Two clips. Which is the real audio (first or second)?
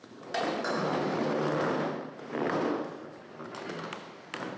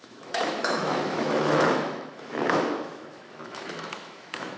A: first